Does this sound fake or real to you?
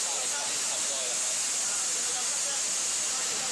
real